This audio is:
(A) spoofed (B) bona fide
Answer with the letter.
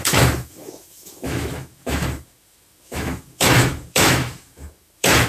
A